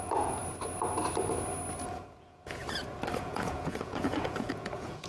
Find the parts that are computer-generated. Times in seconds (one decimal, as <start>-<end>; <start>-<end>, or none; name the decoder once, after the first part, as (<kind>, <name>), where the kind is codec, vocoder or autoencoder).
0.0-0.4 (vocoder, Vocos); 1.9-2.6; 3.2-5.1